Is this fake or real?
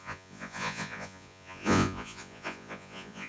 fake